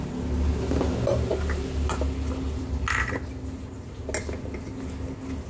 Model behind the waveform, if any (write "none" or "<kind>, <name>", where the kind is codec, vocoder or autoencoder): none